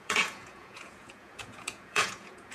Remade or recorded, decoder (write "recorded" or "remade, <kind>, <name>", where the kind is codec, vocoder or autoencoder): remade, vocoder, Vocos